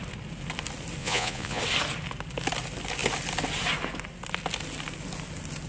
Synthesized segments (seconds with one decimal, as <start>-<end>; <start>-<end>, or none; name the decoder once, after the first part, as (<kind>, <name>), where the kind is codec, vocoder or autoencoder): 1.0-1.6 (vocoder, Vocos)